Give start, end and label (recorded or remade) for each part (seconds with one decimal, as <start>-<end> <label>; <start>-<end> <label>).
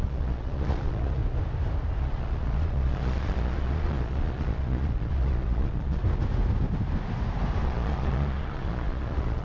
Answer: 0.0-1.2 remade; 1.2-2.0 recorded; 2.0-6.0 remade; 6.0-7.6 recorded; 7.6-9.4 remade